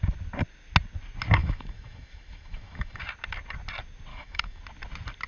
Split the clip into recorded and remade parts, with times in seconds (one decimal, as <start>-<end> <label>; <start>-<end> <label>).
0.0-1.4 recorded; 1.4-3.0 remade; 3.0-4.1 recorded; 4.1-4.6 remade; 4.6-5.3 recorded